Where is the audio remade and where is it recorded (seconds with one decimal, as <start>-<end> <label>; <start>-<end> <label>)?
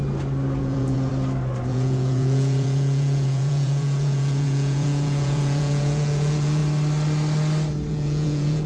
0.0-0.6 recorded; 0.6-1.1 remade; 1.1-1.7 recorded; 1.7-6.6 remade; 6.6-7.9 recorded; 7.9-8.7 remade